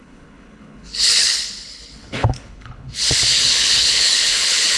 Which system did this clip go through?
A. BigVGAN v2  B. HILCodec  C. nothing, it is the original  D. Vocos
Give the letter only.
B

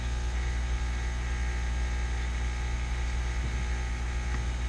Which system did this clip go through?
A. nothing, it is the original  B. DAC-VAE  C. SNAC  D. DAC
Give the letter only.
A